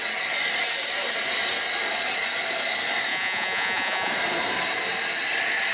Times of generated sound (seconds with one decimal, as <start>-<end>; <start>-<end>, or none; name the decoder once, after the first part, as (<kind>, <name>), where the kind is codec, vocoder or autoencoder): 3.1-4.1 (vocoder, Vocos)